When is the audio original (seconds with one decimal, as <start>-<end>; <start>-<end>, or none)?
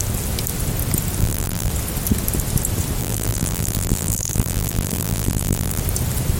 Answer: 0.0-1.2; 1.7-3.0; 5.8-6.4